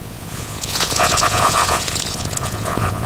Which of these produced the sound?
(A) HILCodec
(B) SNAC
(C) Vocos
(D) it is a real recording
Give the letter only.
C